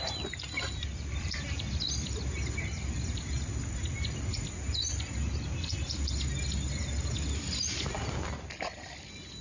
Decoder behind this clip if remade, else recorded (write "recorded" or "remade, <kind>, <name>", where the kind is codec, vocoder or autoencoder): recorded